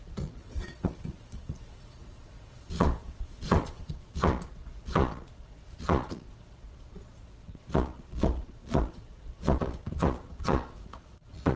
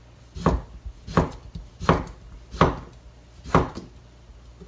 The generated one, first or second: first